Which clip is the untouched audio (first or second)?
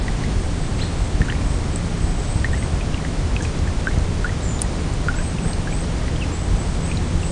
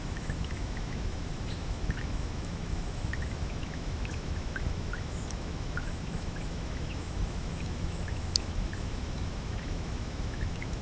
first